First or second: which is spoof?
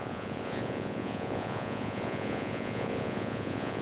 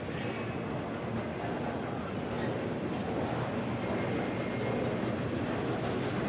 first